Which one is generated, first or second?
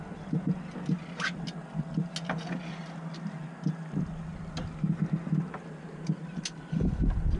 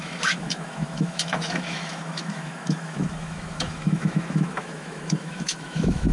second